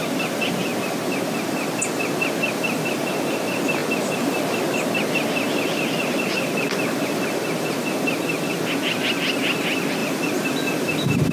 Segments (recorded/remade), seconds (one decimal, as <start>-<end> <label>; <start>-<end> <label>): 0.0-11.3 recorded